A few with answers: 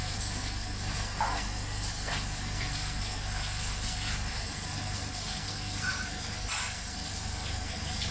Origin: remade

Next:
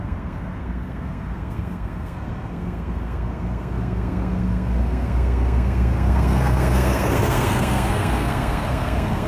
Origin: remade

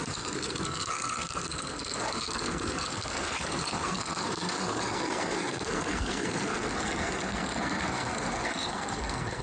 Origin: remade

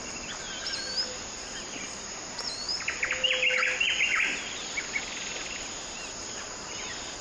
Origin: recorded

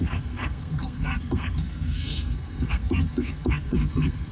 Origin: remade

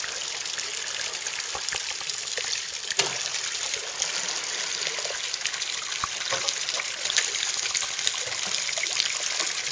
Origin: recorded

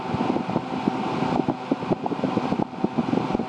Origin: recorded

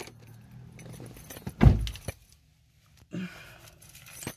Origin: recorded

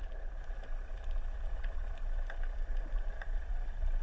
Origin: recorded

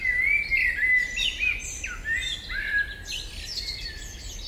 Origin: recorded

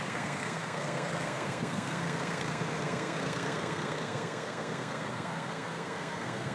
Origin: remade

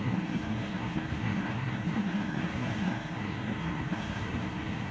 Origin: remade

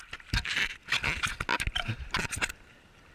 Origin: recorded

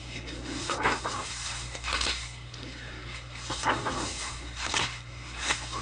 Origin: remade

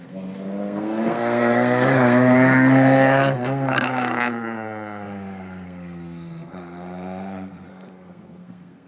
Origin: remade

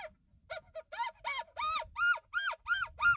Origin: recorded